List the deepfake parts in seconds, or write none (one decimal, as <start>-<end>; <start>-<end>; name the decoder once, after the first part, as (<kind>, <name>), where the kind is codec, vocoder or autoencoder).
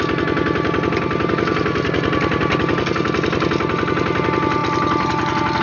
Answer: none